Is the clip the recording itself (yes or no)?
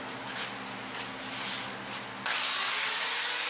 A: yes